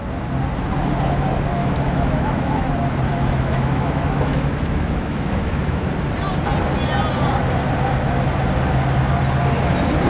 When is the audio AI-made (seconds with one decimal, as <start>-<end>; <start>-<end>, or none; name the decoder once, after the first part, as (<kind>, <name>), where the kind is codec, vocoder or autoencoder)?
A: 1.6-2.7 (autoencoder, DAC-VAE); 3.1-5.9